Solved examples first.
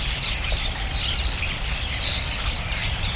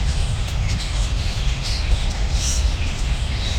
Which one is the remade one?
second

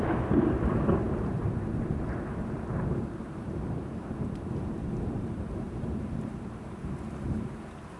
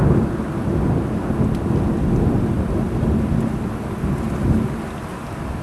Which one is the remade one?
first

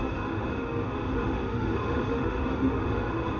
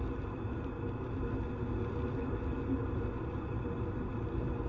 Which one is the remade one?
first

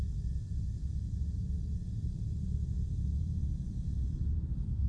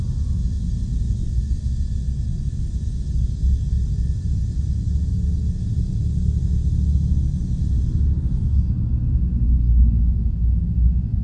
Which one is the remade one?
first